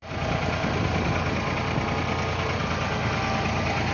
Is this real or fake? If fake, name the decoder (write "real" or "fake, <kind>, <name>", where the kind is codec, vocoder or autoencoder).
real